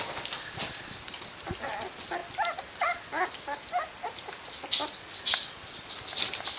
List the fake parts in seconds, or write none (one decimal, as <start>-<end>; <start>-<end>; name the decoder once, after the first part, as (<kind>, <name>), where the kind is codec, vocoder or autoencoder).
none